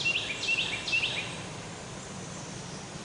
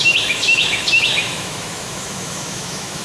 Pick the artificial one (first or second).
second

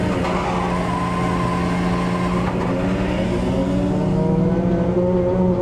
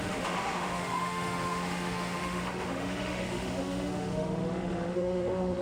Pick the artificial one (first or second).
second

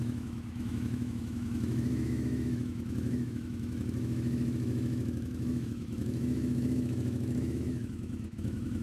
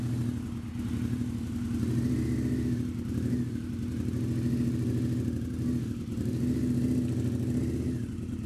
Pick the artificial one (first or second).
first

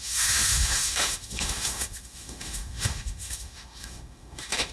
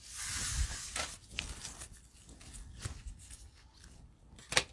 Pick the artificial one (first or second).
first